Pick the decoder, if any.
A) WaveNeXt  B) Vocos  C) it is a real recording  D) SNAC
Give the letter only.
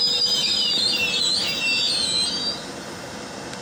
C